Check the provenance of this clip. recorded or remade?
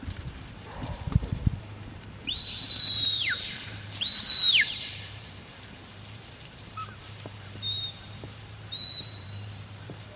remade